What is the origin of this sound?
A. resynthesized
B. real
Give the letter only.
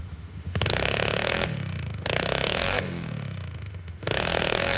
A